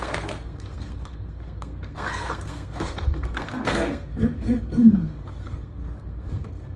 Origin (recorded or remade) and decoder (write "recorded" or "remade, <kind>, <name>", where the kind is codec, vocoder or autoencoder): remade, codec, SNAC